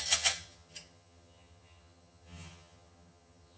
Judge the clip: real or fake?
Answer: fake